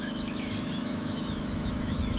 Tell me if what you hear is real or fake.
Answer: fake